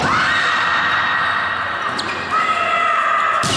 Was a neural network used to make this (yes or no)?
no